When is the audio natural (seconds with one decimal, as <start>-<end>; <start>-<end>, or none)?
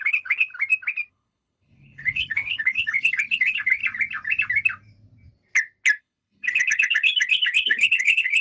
0.5-1.1; 3.8-6.0